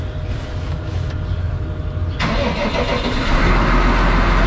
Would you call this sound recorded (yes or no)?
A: yes